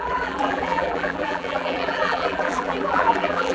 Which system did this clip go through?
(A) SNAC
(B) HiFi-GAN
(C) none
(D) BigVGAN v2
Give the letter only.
D